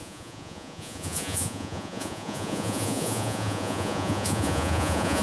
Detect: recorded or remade remade